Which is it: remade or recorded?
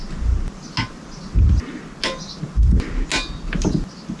recorded